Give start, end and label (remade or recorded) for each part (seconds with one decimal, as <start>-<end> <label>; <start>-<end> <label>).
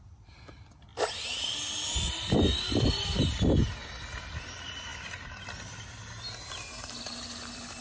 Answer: 0.0-7.8 recorded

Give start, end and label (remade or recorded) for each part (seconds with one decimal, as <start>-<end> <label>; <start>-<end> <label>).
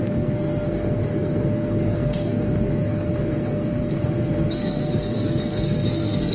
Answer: 0.0-6.3 remade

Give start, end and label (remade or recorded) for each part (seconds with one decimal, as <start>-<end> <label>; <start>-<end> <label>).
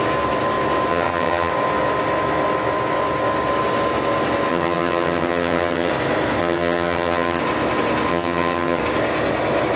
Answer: 0.0-0.9 recorded; 0.9-1.5 remade; 1.5-4.5 recorded; 4.5-5.9 remade; 5.9-6.4 recorded; 6.4-7.4 remade; 7.4-8.1 recorded; 8.1-8.8 remade; 8.8-9.8 recorded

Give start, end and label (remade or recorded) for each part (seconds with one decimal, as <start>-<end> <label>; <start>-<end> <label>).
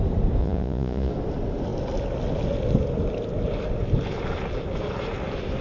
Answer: 0.0-0.4 recorded; 0.4-1.1 remade; 1.1-5.6 recorded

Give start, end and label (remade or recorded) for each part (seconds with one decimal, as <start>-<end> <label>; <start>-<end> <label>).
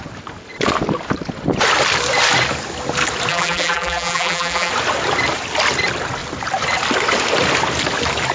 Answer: 0.0-3.3 recorded; 3.3-4.7 remade; 4.7-8.3 recorded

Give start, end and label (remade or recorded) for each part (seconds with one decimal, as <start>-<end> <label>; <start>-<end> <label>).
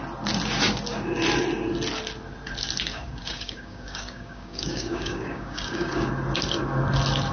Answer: 0.0-2.9 recorded; 2.9-6.1 remade; 6.1-7.3 recorded